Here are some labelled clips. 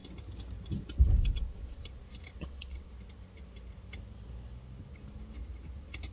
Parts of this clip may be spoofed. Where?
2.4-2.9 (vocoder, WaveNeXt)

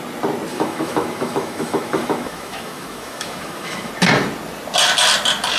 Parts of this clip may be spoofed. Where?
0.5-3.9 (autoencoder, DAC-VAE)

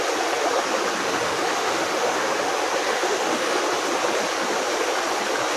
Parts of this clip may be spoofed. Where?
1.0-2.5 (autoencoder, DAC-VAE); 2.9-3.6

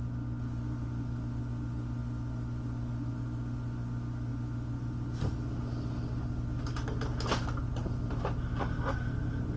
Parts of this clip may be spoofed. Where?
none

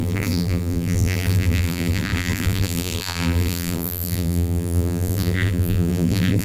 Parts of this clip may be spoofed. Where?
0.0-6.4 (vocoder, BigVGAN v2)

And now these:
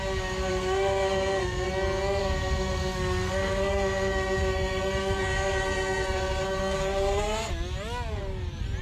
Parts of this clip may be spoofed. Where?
0.5-1.7 (codec, SNAC); 2.2-7.5

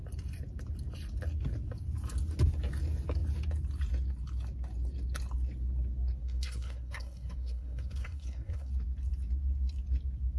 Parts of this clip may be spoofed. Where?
6.2-8.7 (codec, SNAC)